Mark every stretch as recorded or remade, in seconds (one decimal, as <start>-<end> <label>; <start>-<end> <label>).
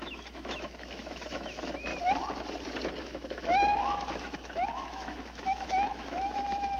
0.0-1.9 remade; 1.9-3.0 recorded; 3.0-6.8 remade